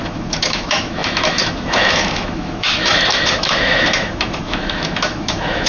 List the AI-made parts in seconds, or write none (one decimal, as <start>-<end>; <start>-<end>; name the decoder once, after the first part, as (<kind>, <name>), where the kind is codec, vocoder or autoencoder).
0.0-5.7 (autoencoder, DAC-VAE)

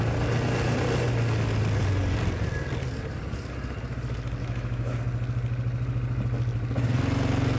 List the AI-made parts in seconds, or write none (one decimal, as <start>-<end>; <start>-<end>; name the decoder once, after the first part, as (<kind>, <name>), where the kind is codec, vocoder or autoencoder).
4.4-5.0 (autoencoder, DAC-VAE)

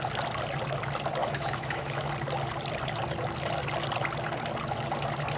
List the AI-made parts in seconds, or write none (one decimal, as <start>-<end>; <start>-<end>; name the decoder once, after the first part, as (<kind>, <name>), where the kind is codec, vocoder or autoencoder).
1.2-2.1 (autoencoder, DAC-VAE)

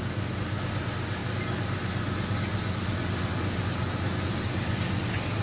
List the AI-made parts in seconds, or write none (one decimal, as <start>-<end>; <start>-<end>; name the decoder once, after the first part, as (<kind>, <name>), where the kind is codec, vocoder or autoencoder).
none